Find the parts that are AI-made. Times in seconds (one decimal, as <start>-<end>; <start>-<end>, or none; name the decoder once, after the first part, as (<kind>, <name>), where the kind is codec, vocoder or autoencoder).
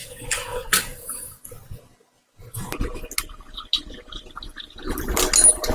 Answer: 0.0-1.4 (codec, DAC)